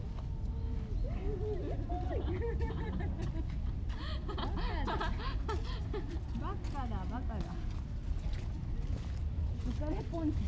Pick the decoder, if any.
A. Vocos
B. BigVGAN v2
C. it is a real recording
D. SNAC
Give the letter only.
C